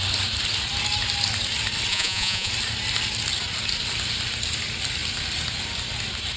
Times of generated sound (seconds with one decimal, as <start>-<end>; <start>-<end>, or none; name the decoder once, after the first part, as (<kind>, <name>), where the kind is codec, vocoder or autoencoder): 1.9-2.5 (vocoder, Vocos)